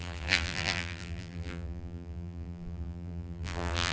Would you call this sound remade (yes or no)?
yes